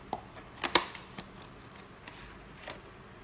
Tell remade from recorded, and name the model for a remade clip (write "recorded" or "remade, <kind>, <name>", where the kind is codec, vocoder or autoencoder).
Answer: recorded